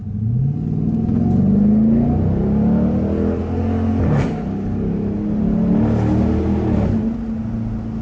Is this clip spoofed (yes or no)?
no